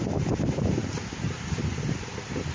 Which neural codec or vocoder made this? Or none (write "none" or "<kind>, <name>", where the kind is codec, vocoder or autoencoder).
vocoder, BigVGAN v2